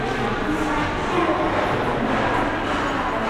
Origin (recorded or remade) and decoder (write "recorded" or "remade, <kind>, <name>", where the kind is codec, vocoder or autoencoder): recorded